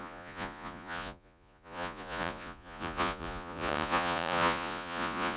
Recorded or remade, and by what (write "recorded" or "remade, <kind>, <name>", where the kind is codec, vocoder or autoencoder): remade, vocoder, Vocos